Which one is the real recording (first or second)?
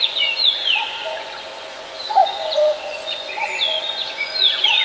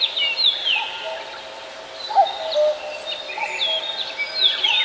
second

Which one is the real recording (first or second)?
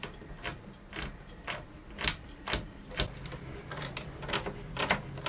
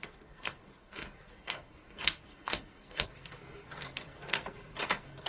first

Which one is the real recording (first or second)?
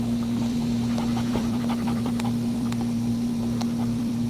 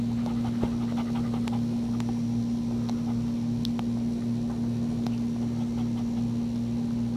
second